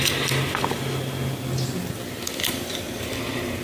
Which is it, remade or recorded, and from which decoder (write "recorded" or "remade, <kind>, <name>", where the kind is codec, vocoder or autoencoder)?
recorded